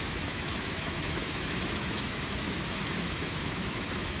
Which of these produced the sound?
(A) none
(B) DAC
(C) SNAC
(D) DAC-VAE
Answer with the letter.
D